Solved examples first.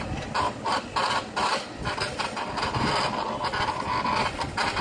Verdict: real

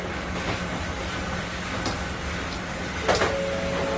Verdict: real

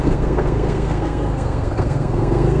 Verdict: fake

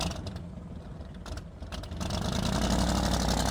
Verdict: fake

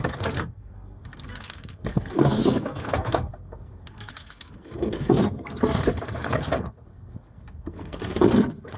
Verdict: fake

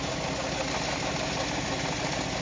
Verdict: real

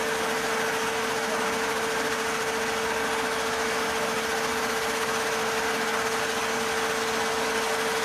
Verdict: real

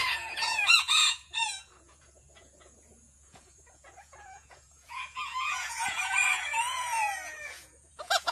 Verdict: fake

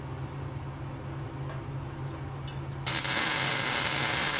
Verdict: real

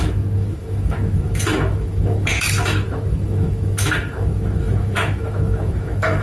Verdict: fake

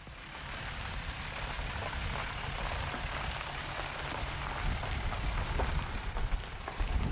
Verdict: real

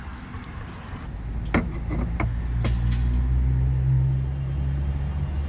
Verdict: real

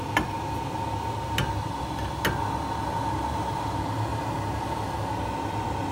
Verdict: real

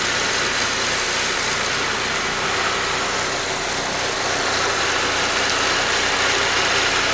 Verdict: real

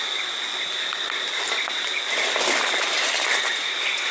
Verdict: real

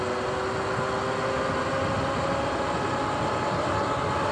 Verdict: real